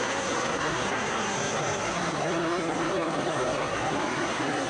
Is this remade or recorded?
remade